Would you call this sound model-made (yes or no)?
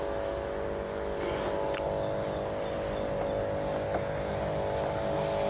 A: no